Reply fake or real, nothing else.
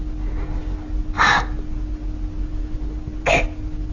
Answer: real